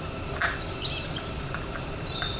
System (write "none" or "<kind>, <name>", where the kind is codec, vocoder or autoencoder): none